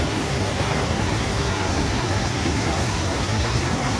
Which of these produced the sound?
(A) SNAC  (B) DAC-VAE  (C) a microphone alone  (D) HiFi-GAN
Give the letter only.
A